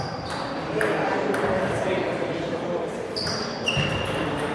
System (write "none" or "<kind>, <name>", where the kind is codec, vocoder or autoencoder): vocoder, BigVGAN v2